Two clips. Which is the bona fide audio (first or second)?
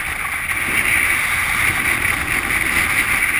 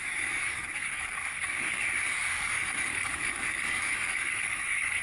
first